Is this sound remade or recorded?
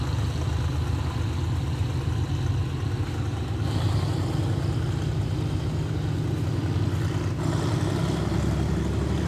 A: recorded